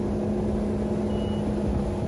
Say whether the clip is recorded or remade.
recorded